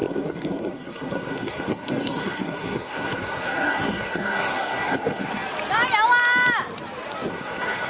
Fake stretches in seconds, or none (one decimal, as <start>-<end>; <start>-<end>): 0.0-5.4; 7.3-7.9